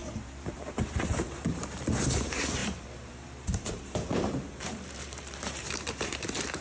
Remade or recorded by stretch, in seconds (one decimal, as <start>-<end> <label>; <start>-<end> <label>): 0.0-1.9 remade; 1.9-2.6 recorded; 2.6-6.6 remade